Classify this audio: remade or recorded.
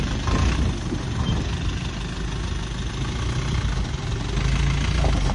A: recorded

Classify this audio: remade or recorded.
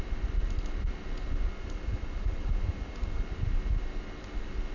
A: recorded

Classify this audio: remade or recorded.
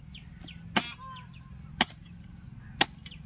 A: recorded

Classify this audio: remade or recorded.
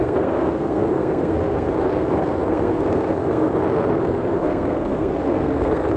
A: remade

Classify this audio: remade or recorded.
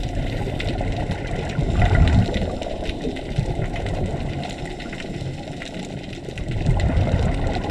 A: recorded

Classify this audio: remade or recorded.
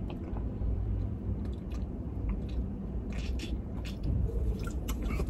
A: remade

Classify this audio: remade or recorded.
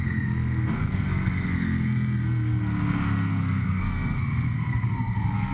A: remade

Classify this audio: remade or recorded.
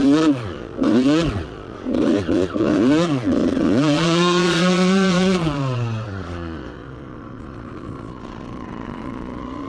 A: remade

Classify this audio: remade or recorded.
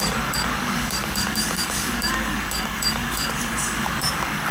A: remade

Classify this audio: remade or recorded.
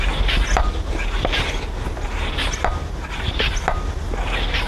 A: recorded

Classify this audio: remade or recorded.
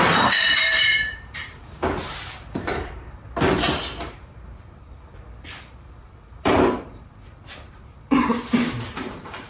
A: remade